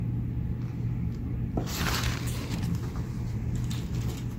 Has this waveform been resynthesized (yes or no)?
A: no